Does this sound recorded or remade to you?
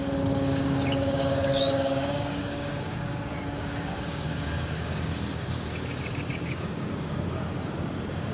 remade